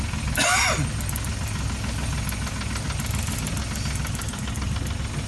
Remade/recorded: recorded